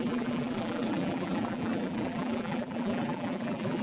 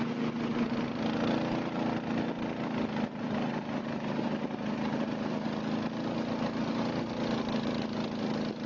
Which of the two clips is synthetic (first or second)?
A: first